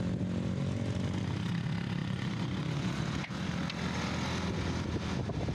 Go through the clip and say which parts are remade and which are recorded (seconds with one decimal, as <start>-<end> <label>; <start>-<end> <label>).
0.0-2.0 recorded; 2.0-3.5 remade; 3.5-5.5 recorded